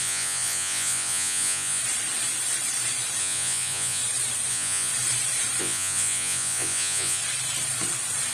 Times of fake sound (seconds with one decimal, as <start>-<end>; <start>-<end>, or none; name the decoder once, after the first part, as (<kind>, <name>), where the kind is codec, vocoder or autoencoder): 0.0-1.8 (vocoder, Vocos); 3.2-4.0; 4.5-4.9; 5.6-7.2